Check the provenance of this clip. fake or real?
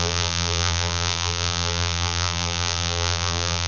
fake